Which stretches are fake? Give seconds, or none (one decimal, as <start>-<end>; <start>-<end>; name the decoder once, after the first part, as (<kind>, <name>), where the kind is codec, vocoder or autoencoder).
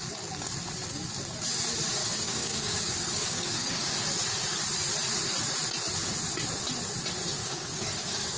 2.0-3.9 (codec, DAC); 7.4-8.4